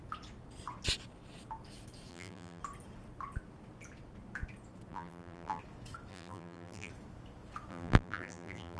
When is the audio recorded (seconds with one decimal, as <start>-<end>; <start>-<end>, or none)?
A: 0.0-2.1; 2.6-4.9; 5.6-6.1; 6.9-7.7